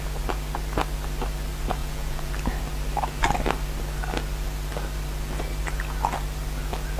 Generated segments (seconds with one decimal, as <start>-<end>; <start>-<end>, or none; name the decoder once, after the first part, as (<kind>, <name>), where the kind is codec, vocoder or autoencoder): 1.8-2.3 (vocoder, Vocos)